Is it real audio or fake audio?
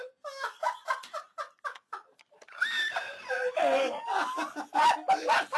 real